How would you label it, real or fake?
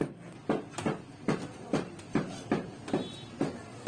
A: real